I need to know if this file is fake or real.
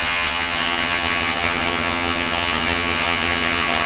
fake